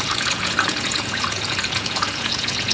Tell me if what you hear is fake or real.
fake